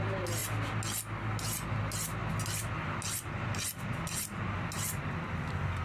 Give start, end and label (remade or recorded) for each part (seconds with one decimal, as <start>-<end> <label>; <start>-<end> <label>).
0.0-5.8 recorded